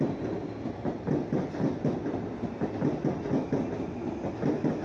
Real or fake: real